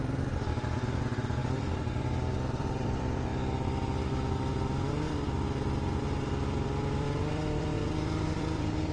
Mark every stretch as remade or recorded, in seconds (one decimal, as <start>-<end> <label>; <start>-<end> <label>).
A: 0.0-3.3 remade; 3.3-4.1 recorded; 4.1-4.5 remade; 4.5-6.4 recorded; 6.4-8.9 remade